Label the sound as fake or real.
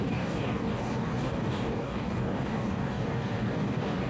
fake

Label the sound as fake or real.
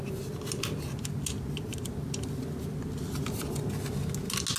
real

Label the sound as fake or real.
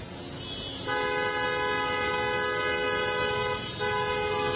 real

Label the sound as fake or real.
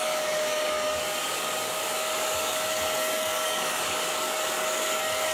fake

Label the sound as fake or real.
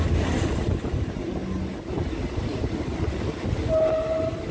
real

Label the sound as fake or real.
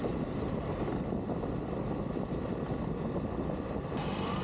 real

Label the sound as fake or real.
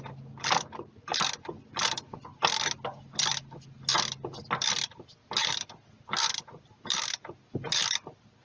real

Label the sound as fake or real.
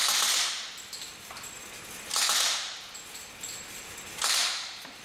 real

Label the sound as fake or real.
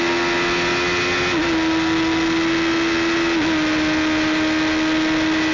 real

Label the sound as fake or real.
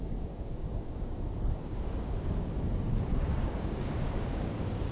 fake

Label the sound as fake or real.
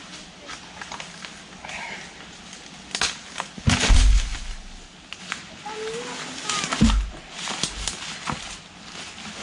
real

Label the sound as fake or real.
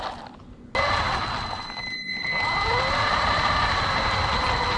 real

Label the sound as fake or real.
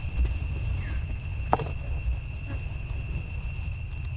real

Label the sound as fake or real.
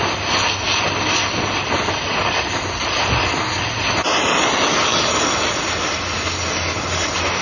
real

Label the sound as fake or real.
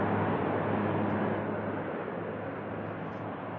real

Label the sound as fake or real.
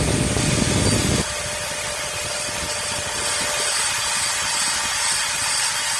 real